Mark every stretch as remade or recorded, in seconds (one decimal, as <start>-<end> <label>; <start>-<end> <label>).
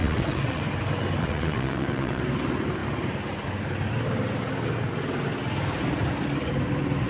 0.0-0.6 remade; 0.6-1.2 recorded; 1.2-2.2 remade; 2.2-7.1 recorded